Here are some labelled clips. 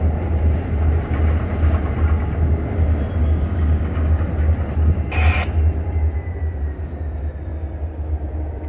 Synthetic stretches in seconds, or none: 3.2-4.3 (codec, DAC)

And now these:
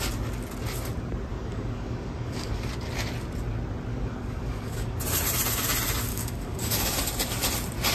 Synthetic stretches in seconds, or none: 1.3-2.7 (codec, DAC); 3.9-5.0; 6.1-7.0

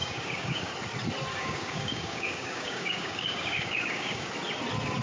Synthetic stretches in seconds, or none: 0.0-0.7 (codec, DAC); 1.3-4.3

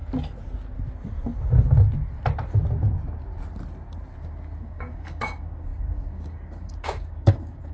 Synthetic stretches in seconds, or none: 4.6-7.7 (codec, DAC)

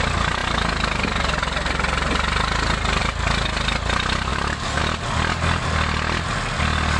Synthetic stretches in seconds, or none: 4.3-4.8 (codec, DAC)

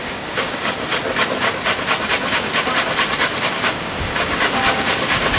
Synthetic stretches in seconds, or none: 0.0-0.9 (codec, DAC); 3.4-5.4